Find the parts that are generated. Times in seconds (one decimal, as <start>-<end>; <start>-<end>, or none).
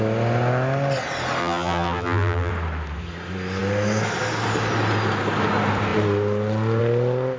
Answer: 1.4-2.5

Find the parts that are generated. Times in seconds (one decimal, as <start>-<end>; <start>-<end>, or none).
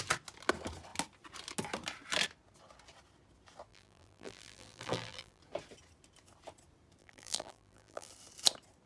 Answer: 3.7-5.4; 7.0-8.1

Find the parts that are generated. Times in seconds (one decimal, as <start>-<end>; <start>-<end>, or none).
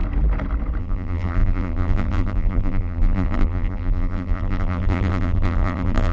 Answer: 0.8-6.1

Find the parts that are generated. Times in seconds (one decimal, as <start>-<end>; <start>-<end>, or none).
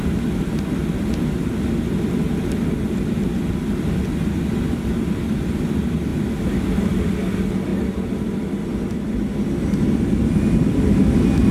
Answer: none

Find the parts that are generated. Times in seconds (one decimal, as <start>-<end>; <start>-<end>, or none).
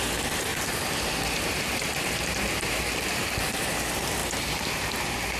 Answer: 0.5-3.7